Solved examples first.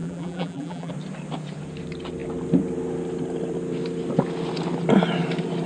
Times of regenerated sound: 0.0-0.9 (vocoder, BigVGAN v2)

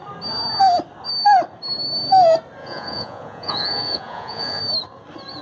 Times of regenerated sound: 2.6-4.6 (vocoder, Vocos)

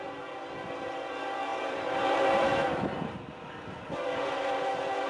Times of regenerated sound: 1.5-4.6 (vocoder, BigVGAN v2)